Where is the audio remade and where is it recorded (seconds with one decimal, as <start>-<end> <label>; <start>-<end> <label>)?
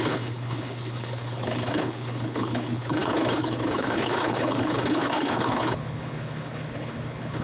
0.0-7.4 remade